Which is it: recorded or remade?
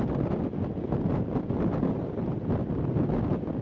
recorded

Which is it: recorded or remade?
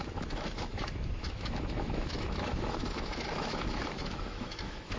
remade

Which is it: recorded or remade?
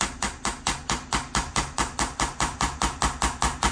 recorded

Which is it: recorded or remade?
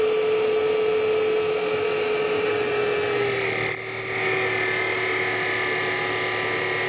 recorded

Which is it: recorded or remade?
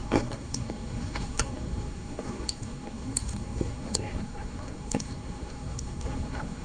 remade